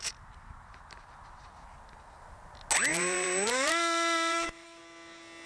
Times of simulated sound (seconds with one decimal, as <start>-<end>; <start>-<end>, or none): 2.9-4.8